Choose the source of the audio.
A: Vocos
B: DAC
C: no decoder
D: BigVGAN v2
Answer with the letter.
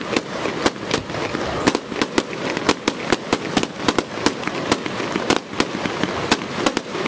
C